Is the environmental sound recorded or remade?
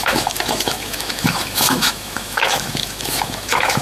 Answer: remade